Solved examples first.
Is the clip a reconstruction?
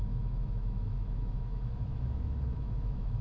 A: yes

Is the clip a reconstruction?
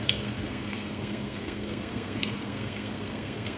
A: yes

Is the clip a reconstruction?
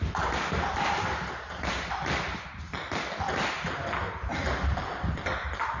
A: no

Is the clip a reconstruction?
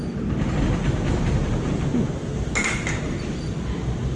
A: no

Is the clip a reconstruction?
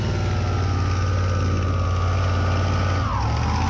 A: no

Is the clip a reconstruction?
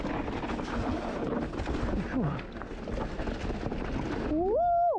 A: no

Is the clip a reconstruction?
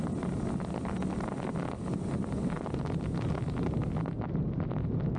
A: no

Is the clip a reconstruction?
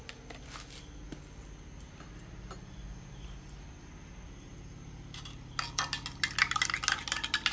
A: no